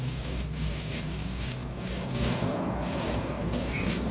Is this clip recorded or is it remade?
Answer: remade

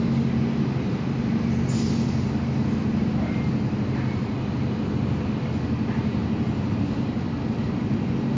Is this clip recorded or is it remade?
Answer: recorded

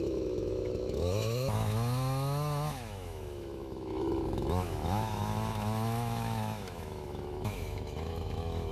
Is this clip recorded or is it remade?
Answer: remade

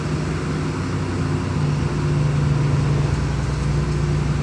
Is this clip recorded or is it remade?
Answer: recorded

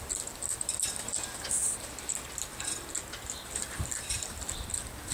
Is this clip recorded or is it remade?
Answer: recorded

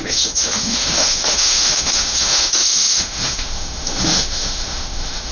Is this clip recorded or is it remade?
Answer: remade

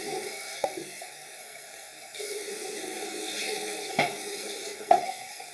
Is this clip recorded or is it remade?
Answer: remade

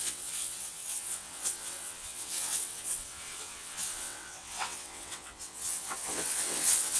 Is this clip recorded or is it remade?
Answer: remade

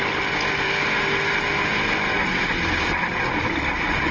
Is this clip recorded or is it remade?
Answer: recorded